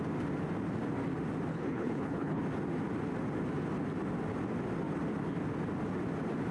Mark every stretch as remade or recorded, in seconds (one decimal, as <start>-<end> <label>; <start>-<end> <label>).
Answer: 0.0-1.5 recorded; 1.5-2.4 remade; 2.4-6.5 recorded